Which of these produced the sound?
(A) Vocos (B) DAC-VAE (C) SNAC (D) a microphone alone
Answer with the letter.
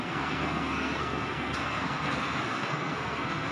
C